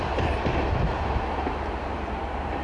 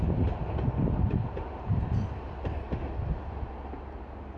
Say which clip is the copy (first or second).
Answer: first